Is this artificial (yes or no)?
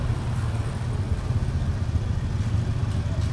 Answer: no